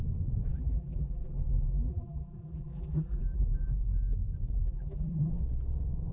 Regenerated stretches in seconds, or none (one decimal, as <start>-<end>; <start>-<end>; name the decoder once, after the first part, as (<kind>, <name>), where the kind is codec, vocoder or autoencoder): 0.5-3.7 (vocoder, BigVGAN v2); 4.6-5.3